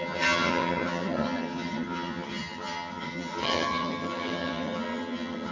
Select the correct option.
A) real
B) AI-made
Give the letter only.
B